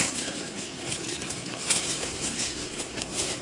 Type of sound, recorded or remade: remade